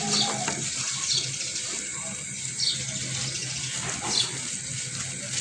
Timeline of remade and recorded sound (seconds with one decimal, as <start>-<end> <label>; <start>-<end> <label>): 0.0-5.4 recorded